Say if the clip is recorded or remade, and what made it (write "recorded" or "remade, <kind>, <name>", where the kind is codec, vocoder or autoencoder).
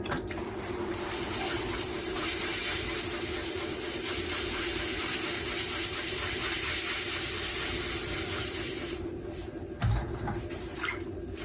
remade, vocoder, BigVGAN v2